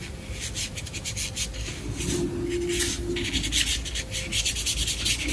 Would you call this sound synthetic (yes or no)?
no